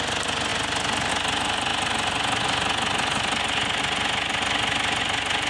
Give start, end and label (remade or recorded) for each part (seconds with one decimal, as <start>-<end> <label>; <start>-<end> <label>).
0.0-5.5 recorded